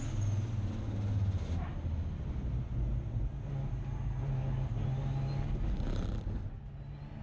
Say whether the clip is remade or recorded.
recorded